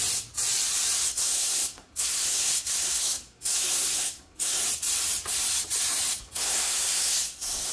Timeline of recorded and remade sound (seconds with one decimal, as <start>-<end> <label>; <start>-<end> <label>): 0.0-1.1 recorded; 1.1-4.6 remade; 4.6-6.1 recorded; 6.1-7.7 remade